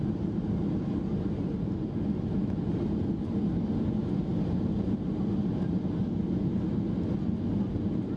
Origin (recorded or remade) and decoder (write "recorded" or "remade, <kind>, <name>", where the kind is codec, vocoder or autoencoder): recorded